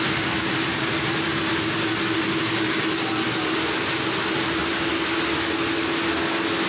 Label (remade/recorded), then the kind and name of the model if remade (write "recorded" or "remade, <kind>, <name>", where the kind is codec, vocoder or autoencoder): recorded